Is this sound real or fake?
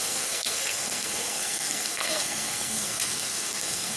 fake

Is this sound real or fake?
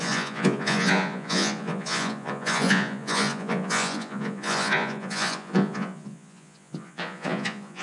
fake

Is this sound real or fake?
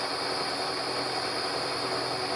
real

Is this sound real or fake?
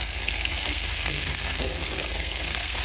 fake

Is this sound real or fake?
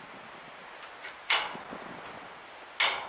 real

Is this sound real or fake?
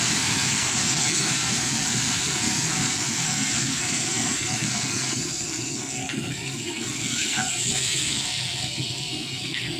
fake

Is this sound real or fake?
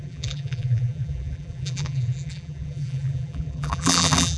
fake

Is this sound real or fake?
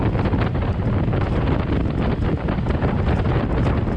real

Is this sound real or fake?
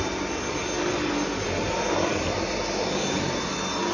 real